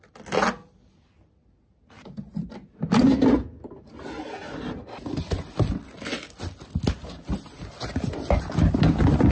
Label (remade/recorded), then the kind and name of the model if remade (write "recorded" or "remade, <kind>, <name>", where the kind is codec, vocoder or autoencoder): recorded